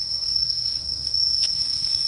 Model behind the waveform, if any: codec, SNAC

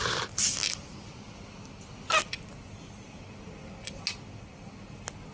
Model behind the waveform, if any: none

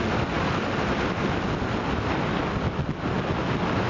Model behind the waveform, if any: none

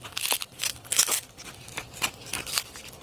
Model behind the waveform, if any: none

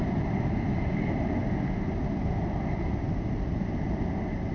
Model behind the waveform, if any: none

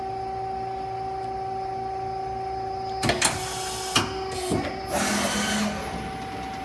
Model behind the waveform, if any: none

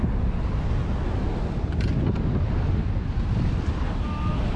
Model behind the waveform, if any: none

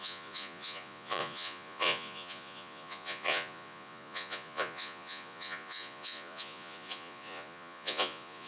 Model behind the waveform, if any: vocoder, Vocos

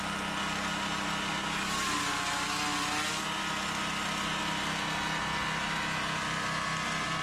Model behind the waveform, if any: none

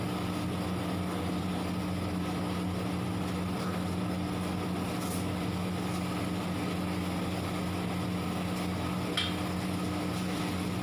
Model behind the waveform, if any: none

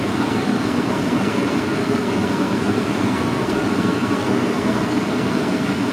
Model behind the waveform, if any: codec, SNAC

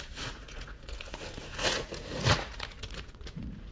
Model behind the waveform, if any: vocoder, Vocos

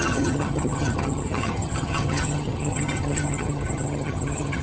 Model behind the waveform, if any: vocoder, HiFi-GAN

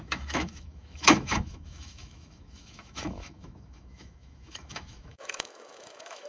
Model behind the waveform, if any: autoencoder, DAC-VAE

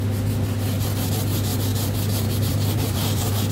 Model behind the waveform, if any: none